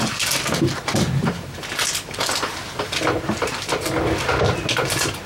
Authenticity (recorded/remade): recorded